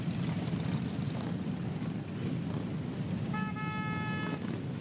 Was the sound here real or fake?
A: real